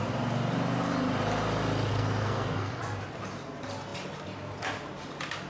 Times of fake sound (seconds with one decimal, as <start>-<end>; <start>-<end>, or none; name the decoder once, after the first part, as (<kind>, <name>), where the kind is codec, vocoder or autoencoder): 1.9-2.8 (codec, SNAC)